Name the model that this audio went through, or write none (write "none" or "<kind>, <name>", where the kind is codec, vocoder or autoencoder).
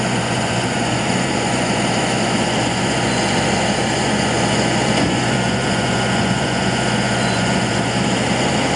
vocoder, Vocos